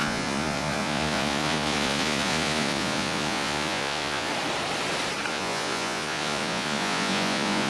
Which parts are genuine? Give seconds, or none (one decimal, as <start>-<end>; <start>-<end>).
4.3-5.3